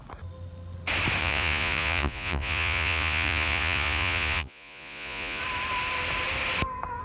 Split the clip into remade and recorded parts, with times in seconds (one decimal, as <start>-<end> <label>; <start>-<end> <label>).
0.0-1.2 recorded; 1.2-5.4 remade; 5.4-7.0 recorded